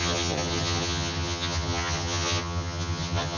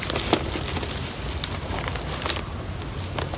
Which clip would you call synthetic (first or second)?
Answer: first